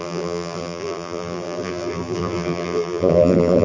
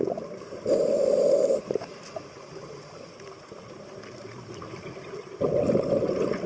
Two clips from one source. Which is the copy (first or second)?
first